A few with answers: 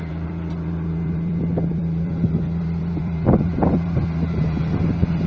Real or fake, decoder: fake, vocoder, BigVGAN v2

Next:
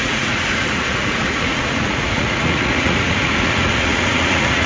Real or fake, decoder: fake, vocoder, Vocos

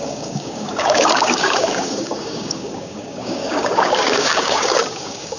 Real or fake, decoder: fake, codec, DAC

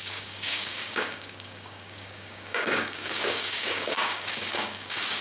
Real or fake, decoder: fake, codec, DAC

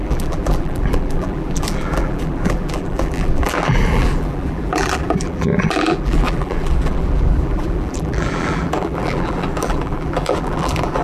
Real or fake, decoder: fake, vocoder, BigVGAN v2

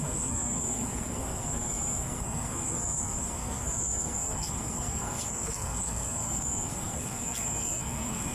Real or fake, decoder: fake, codec, SNAC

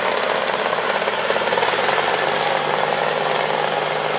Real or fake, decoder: real